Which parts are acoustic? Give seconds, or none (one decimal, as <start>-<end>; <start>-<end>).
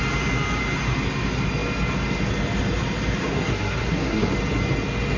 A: 0.0-3.3; 4.3-5.2